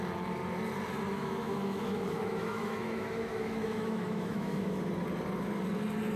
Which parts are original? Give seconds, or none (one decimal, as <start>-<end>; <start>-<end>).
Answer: 0.0-1.1; 4.8-6.2